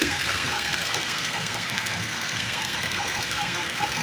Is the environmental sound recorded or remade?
remade